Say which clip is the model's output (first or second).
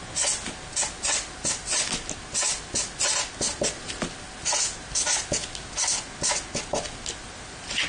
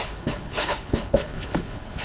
second